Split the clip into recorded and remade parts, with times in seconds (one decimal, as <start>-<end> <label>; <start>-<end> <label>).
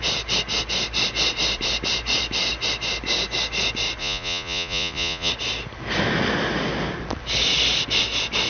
0.0-4.0 recorded; 4.0-5.3 remade; 5.3-8.5 recorded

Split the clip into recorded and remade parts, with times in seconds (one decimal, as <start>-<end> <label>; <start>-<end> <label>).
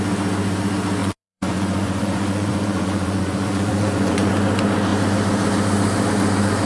0.0-1.0 recorded; 1.0-4.3 remade; 4.3-6.7 recorded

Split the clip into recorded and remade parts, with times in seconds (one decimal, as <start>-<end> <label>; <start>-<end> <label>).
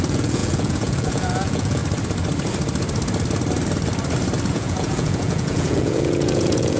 0.0-1.8 remade; 1.8-4.5 recorded; 4.5-6.8 remade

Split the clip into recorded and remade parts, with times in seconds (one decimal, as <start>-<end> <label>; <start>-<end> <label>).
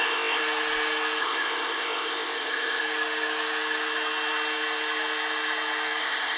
0.0-0.4 remade; 0.4-1.2 recorded; 1.2-2.8 remade; 2.8-6.0 recorded; 6.0-6.4 remade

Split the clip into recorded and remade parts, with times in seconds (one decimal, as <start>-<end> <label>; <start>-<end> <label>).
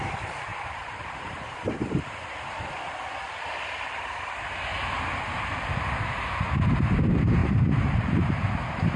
0.0-0.5 recorded; 0.5-2.0 remade; 2.0-7.4 recorded; 7.4-9.0 remade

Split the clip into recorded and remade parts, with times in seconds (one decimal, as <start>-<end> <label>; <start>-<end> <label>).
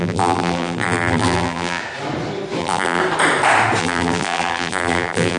0.0-1.8 remade; 1.8-2.6 recorded; 2.6-3.0 remade; 3.0-3.8 recorded; 3.8-5.4 remade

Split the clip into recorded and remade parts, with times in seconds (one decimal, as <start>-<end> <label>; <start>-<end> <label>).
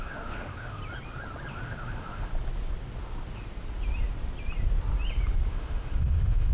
0.0-0.8 remade; 0.8-1.5 recorded; 1.5-2.3 remade; 2.3-5.5 recorded; 5.5-6.5 remade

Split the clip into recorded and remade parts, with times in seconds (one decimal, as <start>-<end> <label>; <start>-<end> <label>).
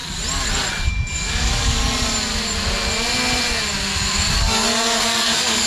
0.0-0.9 recorded; 0.9-1.8 remade; 1.8-4.3 recorded; 4.3-5.7 remade